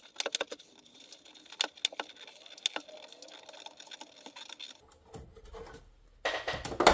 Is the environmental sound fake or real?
real